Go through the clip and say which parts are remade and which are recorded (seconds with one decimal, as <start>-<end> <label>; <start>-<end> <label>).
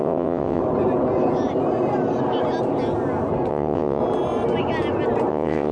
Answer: 0.0-0.6 remade; 0.6-3.5 recorded; 3.5-4.0 remade; 4.0-5.3 recorded; 5.3-5.7 remade